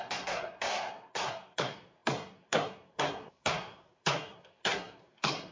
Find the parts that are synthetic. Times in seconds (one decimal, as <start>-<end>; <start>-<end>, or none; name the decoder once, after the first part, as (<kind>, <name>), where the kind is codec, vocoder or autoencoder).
0.0-5.5 (codec, SNAC)